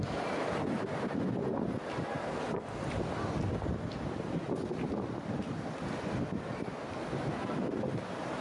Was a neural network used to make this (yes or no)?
no